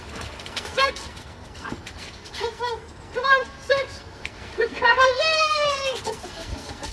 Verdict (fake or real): fake